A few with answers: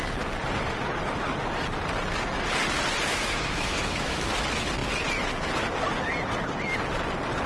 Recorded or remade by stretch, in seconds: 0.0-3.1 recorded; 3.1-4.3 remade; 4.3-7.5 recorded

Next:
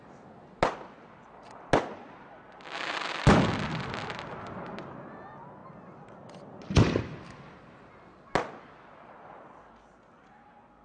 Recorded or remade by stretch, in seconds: 0.0-10.8 recorded

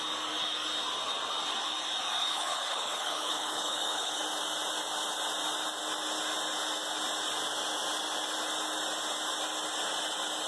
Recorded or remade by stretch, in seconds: 0.0-2.2 recorded; 2.2-4.2 remade; 4.2-10.5 recorded

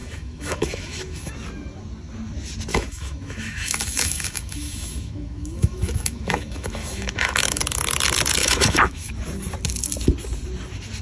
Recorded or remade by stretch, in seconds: 0.0-1.3 remade; 1.3-2.7 recorded; 2.7-7.6 remade; 7.6-8.4 recorded; 8.4-9.1 remade; 9.1-11.0 recorded

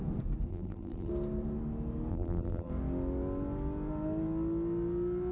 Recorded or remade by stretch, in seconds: 0.0-0.5 recorded; 0.5-1.1 remade; 1.1-2.1 recorded; 2.1-2.7 remade; 2.7-5.3 recorded